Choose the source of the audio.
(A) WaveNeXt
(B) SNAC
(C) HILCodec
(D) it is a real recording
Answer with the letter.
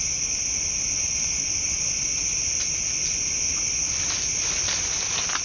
D